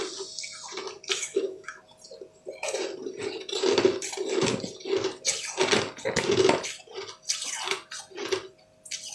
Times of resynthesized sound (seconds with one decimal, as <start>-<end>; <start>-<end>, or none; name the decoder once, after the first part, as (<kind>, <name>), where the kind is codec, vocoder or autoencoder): 1.2-1.8 (autoencoder, DAC-VAE)